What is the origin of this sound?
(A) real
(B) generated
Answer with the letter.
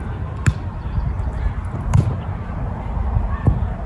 A